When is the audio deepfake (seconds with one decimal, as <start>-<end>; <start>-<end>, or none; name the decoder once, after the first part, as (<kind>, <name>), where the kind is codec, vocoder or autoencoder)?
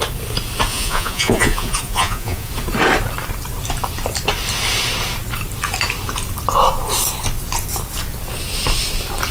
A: 0.7-2.5 (vocoder, Vocos)